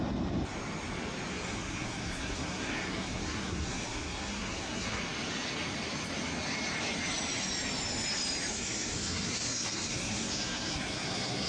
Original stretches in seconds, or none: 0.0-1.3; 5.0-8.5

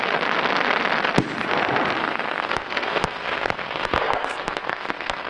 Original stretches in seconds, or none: 0.0-2.0